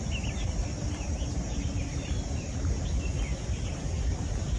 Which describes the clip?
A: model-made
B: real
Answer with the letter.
B